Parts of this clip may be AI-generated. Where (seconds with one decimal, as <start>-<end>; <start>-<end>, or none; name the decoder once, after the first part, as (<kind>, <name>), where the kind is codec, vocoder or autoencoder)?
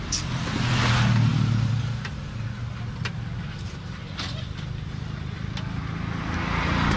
1.3-2.7 (vocoder, BigVGAN v2)